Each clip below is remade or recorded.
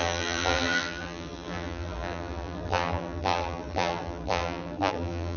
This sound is remade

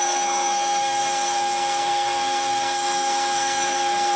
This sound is remade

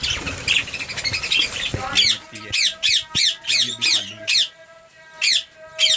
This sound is recorded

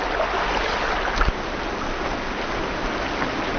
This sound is recorded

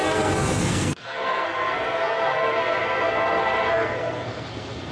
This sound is remade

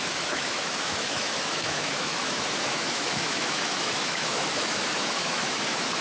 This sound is remade